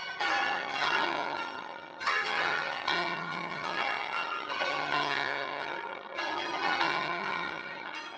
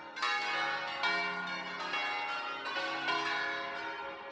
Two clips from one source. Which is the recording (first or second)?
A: second